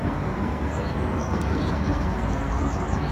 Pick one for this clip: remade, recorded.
remade